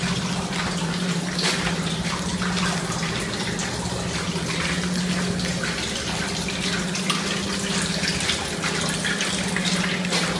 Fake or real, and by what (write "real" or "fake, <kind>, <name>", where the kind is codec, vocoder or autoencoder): real